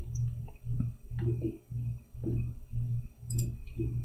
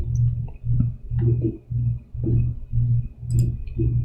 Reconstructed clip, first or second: first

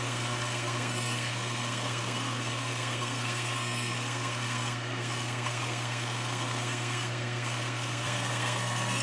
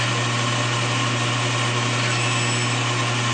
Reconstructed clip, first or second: first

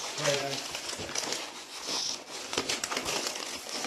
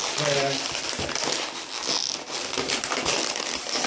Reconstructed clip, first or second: first